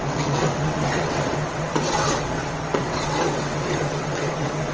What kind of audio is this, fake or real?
fake